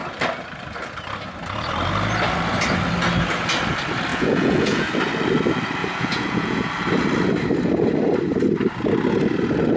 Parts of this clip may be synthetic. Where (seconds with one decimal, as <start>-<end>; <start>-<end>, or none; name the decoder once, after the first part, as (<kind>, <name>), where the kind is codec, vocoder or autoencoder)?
4.1-4.9 (vocoder, Vocos); 5.8-6.7